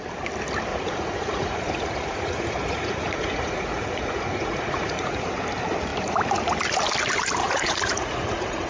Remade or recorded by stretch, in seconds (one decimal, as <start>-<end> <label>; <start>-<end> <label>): 0.0-0.7 recorded; 0.7-5.2 remade; 5.2-7.4 recorded; 7.4-8.7 remade

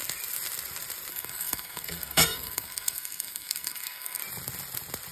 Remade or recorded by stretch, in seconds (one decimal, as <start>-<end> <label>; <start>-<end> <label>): 0.0-1.1 recorded; 1.1-4.2 remade; 4.2-5.1 recorded